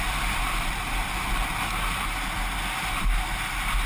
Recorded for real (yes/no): yes